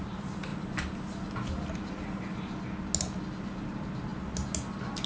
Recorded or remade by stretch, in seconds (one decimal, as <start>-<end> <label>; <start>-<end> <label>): 0.0-5.1 recorded